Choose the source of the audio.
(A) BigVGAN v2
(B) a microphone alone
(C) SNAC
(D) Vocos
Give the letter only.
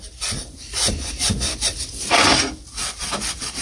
A